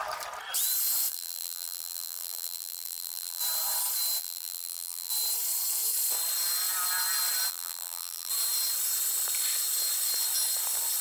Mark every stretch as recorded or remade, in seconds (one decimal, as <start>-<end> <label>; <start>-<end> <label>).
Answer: 0.0-1.1 recorded; 1.1-3.4 remade; 3.4-4.2 recorded; 4.2-5.1 remade; 5.1-7.5 recorded; 7.5-8.3 remade; 8.3-11.0 recorded